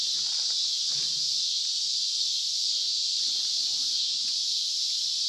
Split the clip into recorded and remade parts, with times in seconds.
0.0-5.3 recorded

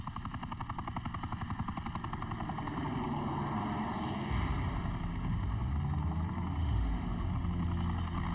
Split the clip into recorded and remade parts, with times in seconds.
0.0-5.1 recorded; 5.1-5.7 remade; 5.7-6.6 recorded; 6.6-7.3 remade; 7.3-8.3 recorded

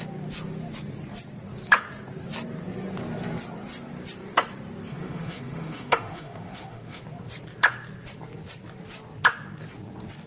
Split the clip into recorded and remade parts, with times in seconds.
0.0-4.9 recorded; 4.9-7.0 remade; 7.0-10.3 recorded

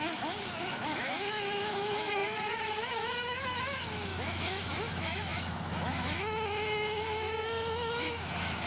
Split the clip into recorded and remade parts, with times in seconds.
0.0-8.7 remade

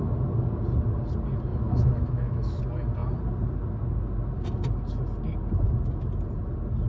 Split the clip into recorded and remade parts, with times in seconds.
0.0-1.5 recorded; 1.5-2.6 remade; 2.6-6.9 recorded